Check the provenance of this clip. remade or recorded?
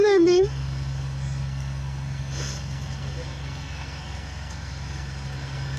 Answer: remade